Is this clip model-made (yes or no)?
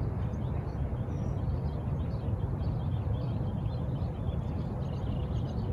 no